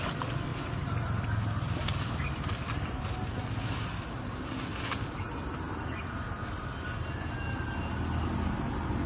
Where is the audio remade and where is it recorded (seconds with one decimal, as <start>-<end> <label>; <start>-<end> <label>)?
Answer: 0.0-0.5 recorded; 0.5-3.3 remade; 3.3-9.1 recorded